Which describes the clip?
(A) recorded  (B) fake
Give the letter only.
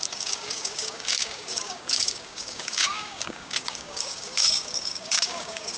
B